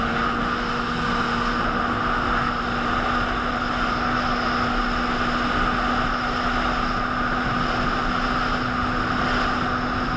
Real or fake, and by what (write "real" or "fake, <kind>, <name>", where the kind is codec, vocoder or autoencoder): real